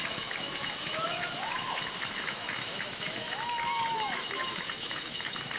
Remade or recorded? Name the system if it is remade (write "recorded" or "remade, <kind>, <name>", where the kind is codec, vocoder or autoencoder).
remade, autoencoder, DAC-VAE